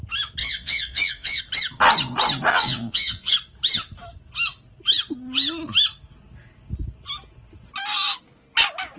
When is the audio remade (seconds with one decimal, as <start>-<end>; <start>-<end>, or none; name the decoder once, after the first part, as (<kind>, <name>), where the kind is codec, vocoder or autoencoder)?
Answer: 0.4-1.4 (vocoder, Vocos); 2.5-3.3